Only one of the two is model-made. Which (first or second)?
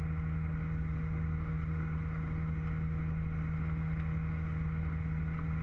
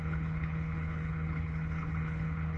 second